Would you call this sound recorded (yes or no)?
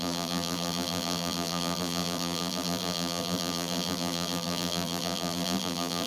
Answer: no